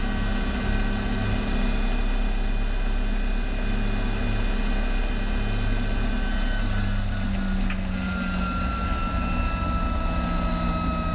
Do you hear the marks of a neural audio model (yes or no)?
no